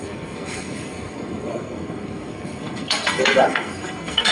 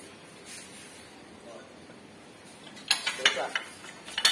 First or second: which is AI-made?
first